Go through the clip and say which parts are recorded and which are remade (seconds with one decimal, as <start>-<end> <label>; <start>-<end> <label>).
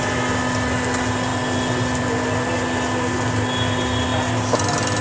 0.0-5.0 recorded